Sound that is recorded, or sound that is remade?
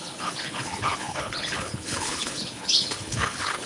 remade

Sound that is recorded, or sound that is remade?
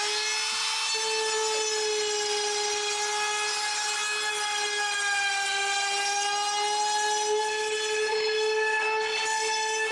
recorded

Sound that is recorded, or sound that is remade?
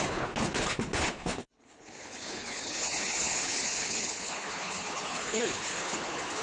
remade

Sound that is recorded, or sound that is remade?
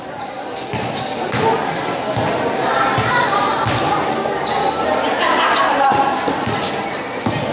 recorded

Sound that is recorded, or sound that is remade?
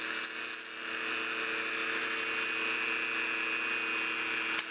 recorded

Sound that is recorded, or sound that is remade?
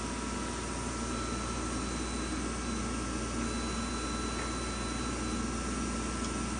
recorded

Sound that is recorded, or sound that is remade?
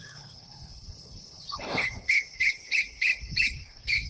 remade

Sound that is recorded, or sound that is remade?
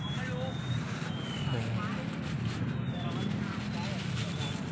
recorded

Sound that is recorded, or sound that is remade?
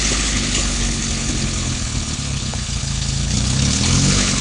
remade